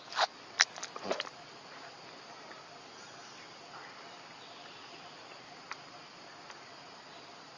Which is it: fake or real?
real